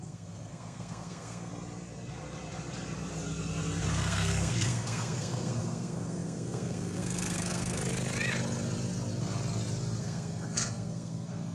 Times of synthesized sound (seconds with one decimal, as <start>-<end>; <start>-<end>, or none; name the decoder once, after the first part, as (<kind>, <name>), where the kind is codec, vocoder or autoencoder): 0.0-1.5 (codec, SNAC); 3.9-7.8; 10.0-11.5